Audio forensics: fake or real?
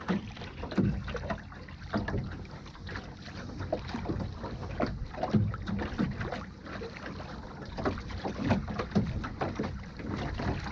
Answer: real